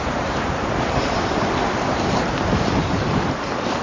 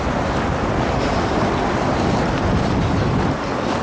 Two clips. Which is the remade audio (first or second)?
first